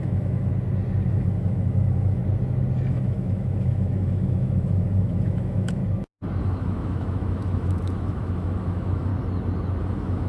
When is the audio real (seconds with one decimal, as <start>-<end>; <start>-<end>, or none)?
0.5-1.1; 2.2-2.9; 5.8-6.4; 9.1-9.8